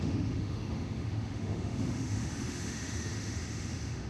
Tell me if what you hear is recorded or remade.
remade